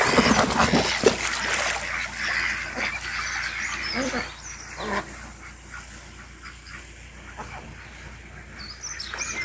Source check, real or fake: real